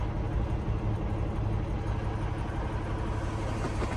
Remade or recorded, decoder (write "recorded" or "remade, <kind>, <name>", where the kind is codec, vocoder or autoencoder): recorded